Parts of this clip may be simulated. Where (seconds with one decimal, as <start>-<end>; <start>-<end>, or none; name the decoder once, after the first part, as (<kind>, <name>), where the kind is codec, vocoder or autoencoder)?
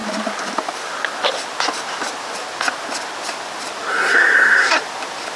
3.9-4.8 (codec, SNAC)